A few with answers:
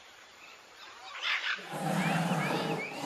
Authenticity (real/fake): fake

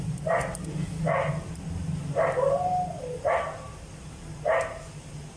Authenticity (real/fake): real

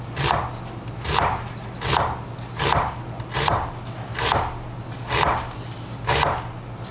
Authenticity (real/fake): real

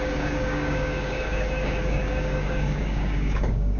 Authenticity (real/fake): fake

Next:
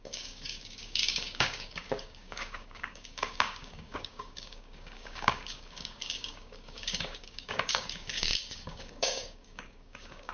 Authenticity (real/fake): fake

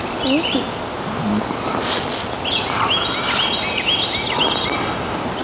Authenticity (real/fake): real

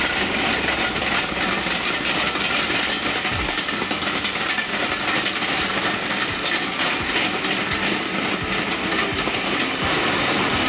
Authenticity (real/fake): real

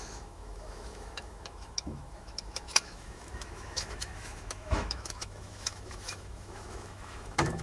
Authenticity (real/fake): fake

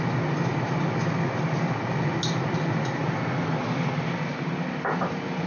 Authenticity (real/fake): real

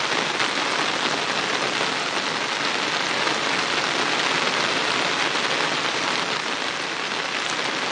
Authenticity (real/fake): real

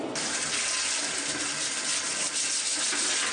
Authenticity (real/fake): real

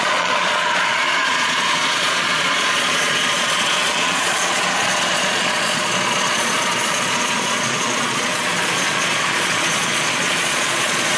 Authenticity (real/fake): fake